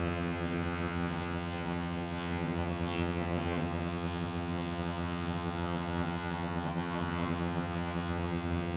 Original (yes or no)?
no